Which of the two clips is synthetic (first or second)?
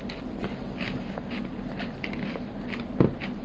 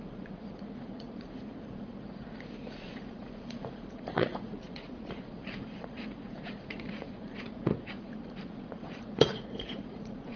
second